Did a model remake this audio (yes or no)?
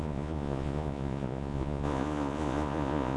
yes